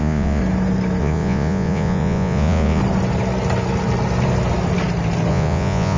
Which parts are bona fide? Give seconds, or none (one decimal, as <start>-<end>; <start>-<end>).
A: 0.4-1.0; 2.8-5.3